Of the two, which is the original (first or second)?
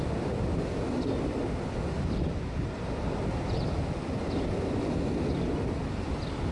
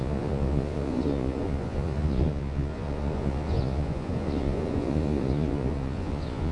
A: first